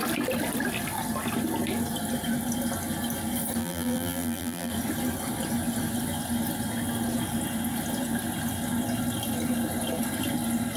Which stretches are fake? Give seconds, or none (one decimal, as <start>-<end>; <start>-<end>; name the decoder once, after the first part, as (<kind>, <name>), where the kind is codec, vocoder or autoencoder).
3.6-4.7 (vocoder, BigVGAN v2)